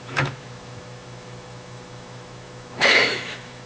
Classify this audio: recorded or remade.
remade